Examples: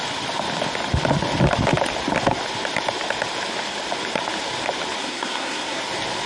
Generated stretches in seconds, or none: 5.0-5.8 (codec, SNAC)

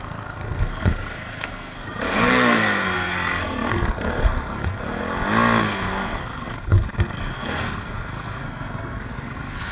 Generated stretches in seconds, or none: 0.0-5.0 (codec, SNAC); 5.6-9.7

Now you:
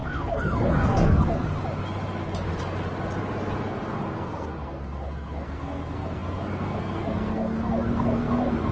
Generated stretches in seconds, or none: 0.0-1.5 (codec, SNAC); 3.7-8.7

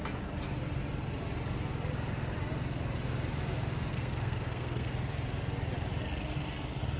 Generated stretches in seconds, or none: 3.9-4.9 (codec, SNAC)